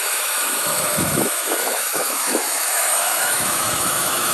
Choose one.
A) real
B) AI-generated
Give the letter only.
B